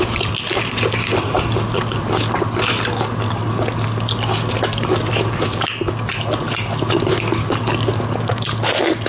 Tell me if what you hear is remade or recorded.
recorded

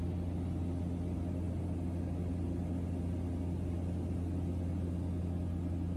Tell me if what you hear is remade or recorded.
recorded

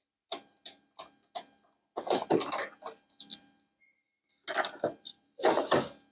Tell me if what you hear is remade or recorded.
recorded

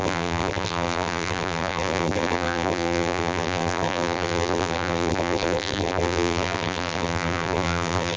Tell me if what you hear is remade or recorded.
remade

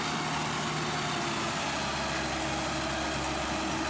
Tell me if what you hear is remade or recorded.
recorded